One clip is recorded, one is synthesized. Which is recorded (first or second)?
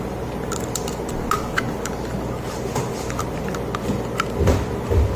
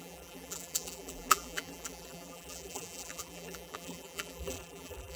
first